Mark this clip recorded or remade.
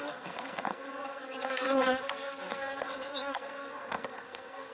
remade